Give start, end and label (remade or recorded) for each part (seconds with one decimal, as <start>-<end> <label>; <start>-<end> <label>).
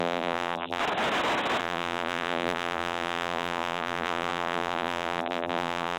0.0-0.8 remade; 0.8-1.6 recorded; 1.6-6.0 remade